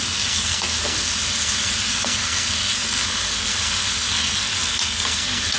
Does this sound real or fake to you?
fake